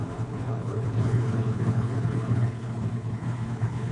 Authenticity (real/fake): fake